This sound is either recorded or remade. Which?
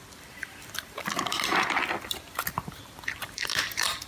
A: remade